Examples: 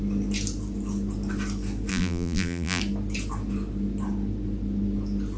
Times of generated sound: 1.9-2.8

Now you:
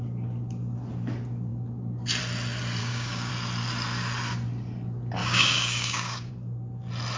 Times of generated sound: 2.8-3.3; 5.2-6.3

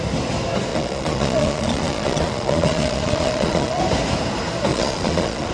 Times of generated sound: 0.7-3.8; 4.7-5.5

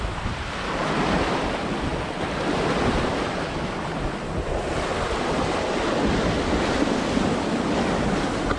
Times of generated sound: none